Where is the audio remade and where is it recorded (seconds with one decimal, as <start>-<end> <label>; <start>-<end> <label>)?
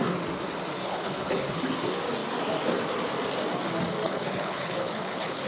0.0-0.8 recorded; 0.8-1.5 remade; 1.5-4.0 recorded; 4.0-5.5 remade